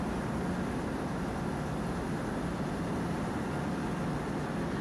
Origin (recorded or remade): recorded